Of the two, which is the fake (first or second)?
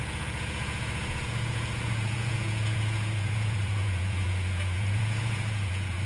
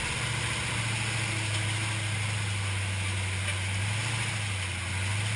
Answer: first